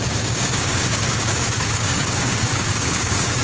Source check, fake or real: fake